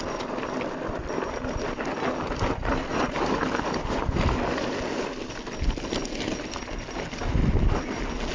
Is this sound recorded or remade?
recorded